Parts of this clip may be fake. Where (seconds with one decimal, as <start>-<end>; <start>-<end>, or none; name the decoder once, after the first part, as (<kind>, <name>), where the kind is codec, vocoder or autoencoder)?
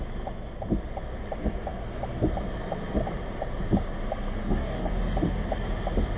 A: 4.4-4.9 (codec, DAC)